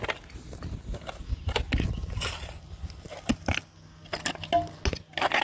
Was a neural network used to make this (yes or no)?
no